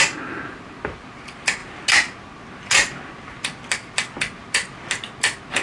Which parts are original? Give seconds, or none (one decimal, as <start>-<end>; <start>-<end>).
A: 0.0-5.6